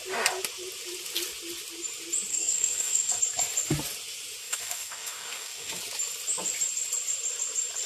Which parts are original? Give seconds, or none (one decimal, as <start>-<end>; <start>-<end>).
0.0-2.3; 3.2-4.4; 5.8-7.9